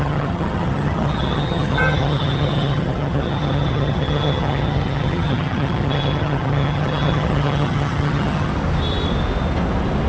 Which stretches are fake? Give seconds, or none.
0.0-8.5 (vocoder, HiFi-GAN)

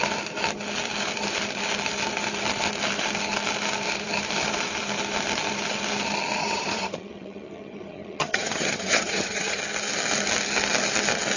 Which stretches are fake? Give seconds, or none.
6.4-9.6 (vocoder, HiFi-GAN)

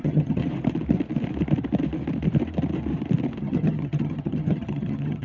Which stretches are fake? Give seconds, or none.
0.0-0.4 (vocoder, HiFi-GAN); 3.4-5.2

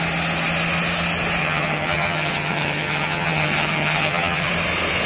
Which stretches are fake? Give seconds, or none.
1.4-4.5 (vocoder, HiFi-GAN)

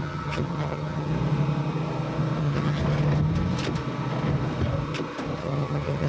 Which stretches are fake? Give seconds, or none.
0.0-1.1 (vocoder, HiFi-GAN); 2.4-2.8; 5.4-6.1